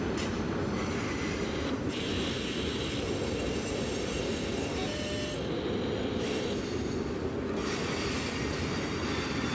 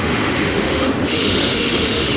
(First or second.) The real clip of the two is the first